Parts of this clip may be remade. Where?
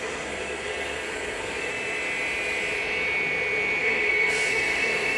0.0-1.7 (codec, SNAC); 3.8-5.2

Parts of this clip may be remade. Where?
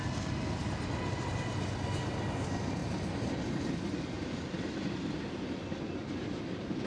none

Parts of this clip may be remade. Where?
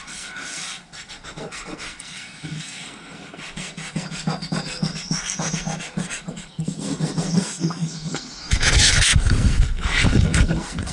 0.0-10.9 (codec, SNAC)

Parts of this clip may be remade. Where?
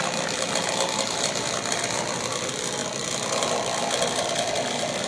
none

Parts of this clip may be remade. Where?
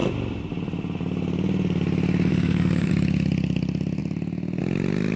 2.3-2.9 (codec, SNAC)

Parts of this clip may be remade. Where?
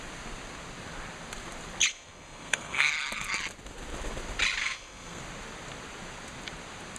1.9-2.9 (codec, SNAC); 4.6-5.2